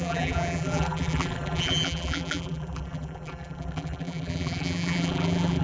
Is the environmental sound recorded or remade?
remade